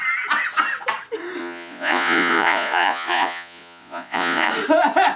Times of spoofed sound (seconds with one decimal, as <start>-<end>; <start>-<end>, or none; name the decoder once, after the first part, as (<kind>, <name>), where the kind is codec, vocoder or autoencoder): 1.4-4.5 (vocoder, Vocos)